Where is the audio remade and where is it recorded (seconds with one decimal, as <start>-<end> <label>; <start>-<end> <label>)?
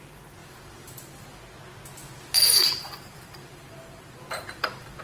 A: 0.0-0.4 recorded; 0.4-1.4 remade; 1.4-2.0 recorded; 2.0-5.0 remade